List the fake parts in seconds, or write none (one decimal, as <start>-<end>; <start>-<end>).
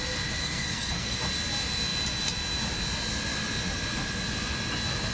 0.4-1.2